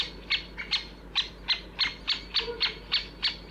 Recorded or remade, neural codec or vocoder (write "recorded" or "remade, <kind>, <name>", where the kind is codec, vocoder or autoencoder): recorded